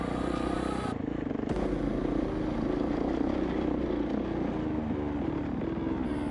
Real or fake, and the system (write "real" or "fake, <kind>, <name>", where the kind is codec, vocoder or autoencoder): real